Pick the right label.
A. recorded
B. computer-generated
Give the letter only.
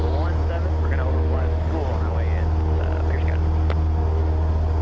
A